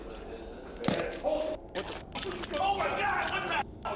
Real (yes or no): yes